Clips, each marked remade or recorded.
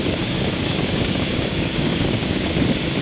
remade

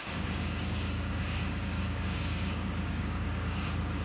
remade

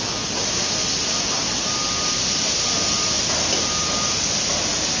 recorded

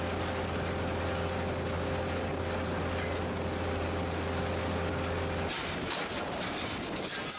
recorded